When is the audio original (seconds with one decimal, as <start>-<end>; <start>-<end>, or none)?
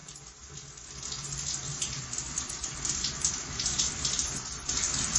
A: 0.0-5.2